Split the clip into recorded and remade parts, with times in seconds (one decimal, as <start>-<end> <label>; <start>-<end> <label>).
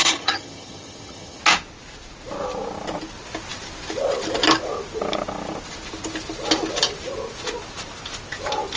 0.0-1.4 remade; 1.4-8.8 recorded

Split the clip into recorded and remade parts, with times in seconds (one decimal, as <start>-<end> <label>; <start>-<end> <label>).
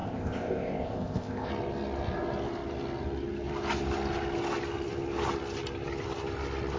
0.0-1.5 remade; 1.5-6.8 recorded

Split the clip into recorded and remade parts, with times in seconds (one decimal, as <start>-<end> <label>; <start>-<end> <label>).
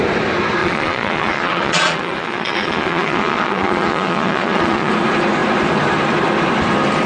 0.0-0.6 recorded; 0.6-4.9 remade; 4.9-7.1 recorded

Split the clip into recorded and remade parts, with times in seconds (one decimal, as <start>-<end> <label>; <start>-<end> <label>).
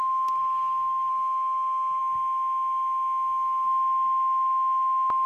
0.0-0.4 recorded; 0.4-1.1 remade; 1.1-5.3 recorded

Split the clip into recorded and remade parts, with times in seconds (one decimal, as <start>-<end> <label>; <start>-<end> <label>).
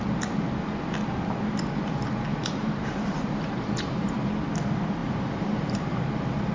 0.0-2.3 recorded; 2.3-4.3 remade; 4.3-5.0 recorded; 5.0-6.5 remade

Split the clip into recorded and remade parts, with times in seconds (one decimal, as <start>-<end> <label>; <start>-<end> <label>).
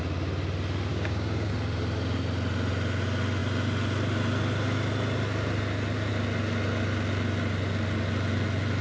0.0-0.9 recorded; 0.9-1.5 remade; 1.5-8.8 recorded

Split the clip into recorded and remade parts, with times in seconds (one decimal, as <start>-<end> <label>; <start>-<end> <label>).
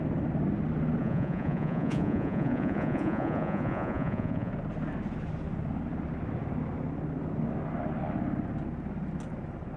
0.0-1.0 recorded; 1.0-4.5 remade; 4.5-9.8 recorded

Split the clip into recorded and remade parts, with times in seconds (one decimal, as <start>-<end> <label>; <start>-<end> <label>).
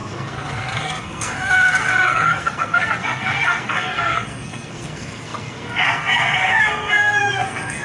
0.0-7.8 remade